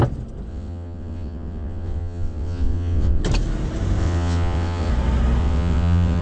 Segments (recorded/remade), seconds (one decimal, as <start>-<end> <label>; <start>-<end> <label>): 0.0-0.5 recorded; 0.5-3.2 remade; 3.2-4.0 recorded; 4.0-4.9 remade; 4.9-5.4 recorded; 5.4-6.2 remade